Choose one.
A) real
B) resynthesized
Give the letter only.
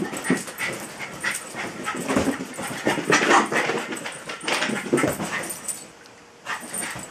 A